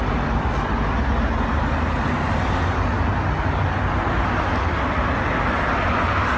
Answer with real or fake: real